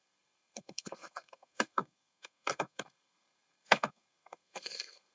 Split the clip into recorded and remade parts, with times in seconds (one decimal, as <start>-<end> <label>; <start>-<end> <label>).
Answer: 0.0-5.1 remade

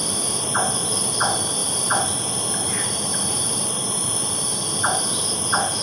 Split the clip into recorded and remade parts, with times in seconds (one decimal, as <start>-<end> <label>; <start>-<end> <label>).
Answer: 0.0-5.8 recorded

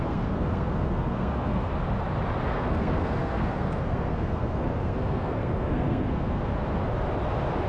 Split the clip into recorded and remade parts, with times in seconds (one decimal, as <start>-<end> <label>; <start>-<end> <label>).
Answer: 0.0-1.7 remade; 1.7-2.4 recorded; 2.4-6.5 remade; 6.5-7.7 recorded

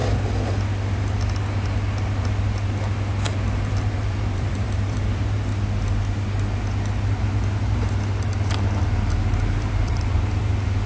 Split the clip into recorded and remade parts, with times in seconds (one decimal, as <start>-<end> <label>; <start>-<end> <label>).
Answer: 0.0-3.6 recorded; 3.6-5.5 remade; 5.5-9.4 recorded; 9.4-10.9 remade

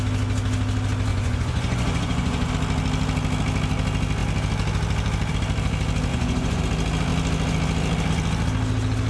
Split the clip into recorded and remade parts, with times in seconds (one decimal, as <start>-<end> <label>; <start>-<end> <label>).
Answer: 0.0-1.1 recorded; 1.1-2.5 remade; 2.5-6.1 recorded; 6.1-6.6 remade; 6.6-9.1 recorded

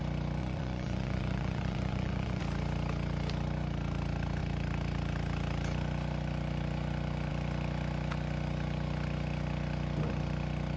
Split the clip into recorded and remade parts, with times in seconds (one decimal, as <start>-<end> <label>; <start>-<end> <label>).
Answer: 0.0-0.4 recorded; 0.4-2.4 remade; 2.4-10.8 recorded

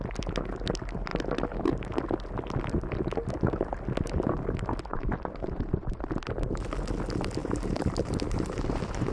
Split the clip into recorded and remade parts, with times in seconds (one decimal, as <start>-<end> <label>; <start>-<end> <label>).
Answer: 0.0-4.9 recorded; 4.9-6.0 remade; 6.0-7.4 recorded; 7.4-9.1 remade

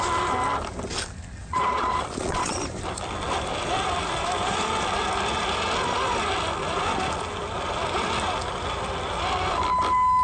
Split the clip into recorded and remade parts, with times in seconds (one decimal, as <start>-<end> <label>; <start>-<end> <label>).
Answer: 0.0-1.4 recorded; 1.4-2.6 remade; 2.6-10.2 recorded